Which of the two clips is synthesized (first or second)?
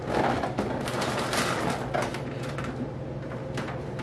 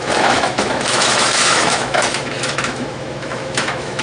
second